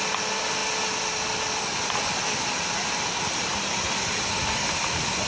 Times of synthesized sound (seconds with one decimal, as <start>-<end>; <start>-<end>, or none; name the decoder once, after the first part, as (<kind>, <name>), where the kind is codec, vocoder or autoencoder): none